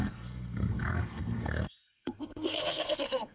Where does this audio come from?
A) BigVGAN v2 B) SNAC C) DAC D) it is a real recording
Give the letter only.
B